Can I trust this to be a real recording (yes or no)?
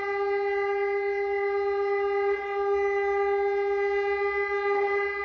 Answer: yes